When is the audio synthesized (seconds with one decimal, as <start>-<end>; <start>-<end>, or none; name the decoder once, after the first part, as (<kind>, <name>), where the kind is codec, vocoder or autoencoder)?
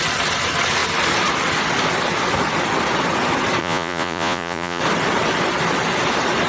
3.6-4.8 (vocoder, Vocos)